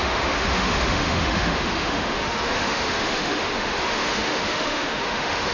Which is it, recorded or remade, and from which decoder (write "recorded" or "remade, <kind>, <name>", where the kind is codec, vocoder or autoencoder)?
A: remade, autoencoder, DAC-VAE